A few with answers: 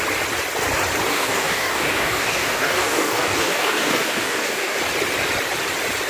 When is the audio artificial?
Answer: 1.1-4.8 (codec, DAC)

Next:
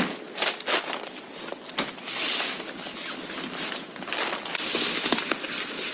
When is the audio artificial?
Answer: none

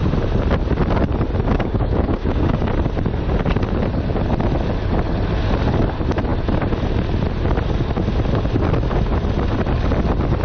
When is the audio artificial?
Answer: 1.5-2.7 (codec, DAC)

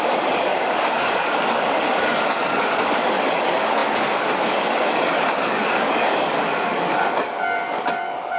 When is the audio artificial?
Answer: 0.0-8.4 (codec, DAC)

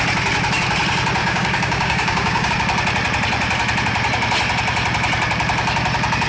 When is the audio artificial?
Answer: 1.2-2.5 (codec, DAC)